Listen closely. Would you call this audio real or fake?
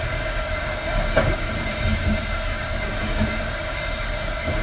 fake